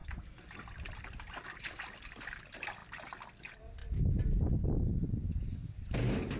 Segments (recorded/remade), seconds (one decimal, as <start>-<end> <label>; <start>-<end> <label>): 0.0-3.8 recorded; 3.8-4.6 remade; 4.6-6.4 recorded